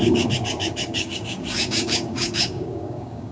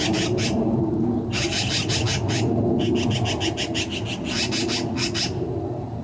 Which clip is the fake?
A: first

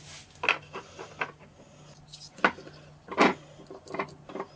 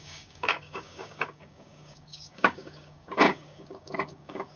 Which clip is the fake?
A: second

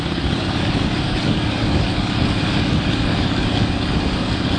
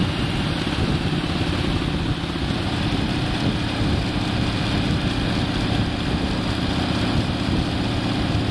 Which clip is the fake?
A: first